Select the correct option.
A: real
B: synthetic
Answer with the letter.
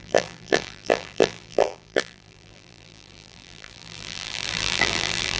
B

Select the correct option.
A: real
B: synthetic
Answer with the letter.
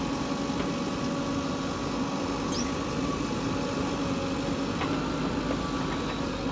A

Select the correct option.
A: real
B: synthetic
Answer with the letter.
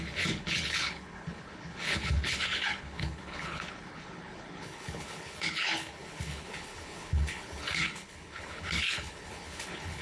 B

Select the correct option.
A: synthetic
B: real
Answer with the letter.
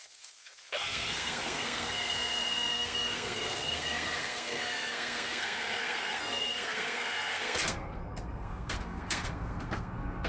A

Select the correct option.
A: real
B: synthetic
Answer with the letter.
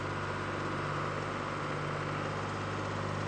A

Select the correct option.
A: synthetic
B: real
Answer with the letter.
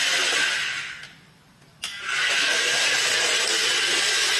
B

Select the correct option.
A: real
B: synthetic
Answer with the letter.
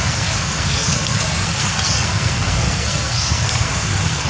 B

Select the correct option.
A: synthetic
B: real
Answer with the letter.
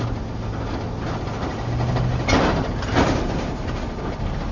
B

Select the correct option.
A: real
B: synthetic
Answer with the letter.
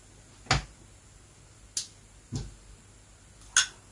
A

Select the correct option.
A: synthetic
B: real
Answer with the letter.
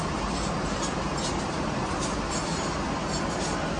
B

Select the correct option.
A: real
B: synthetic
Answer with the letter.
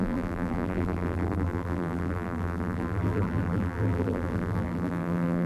B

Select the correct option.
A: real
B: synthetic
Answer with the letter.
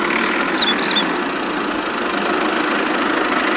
A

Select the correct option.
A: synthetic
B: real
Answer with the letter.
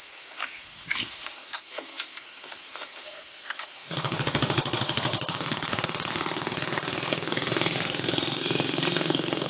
A